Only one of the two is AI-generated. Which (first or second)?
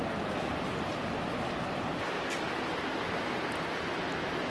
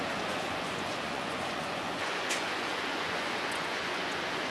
second